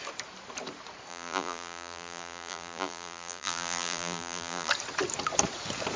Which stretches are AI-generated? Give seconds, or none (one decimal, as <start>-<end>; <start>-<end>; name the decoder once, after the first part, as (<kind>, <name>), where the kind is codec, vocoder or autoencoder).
1.1-4.7 (vocoder, BigVGAN v2)